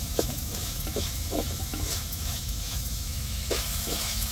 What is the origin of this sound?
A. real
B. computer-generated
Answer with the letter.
B